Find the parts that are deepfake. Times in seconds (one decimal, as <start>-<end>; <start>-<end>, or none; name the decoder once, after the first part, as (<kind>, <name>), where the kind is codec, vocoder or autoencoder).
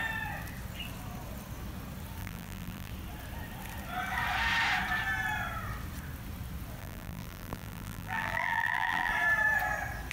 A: 2.2-2.9 (vocoder, BigVGAN v2); 6.8-9.1